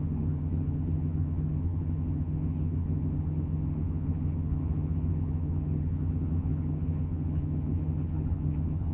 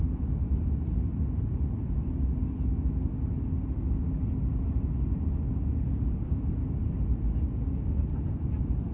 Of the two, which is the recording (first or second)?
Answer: second